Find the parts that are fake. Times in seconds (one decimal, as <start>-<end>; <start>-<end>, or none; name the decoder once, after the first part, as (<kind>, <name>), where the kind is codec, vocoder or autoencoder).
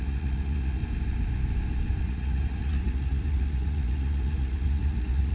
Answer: 0.0-0.8 (vocoder, Vocos); 2.0-5.3